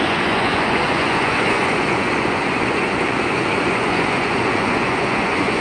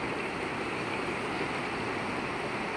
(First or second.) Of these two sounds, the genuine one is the second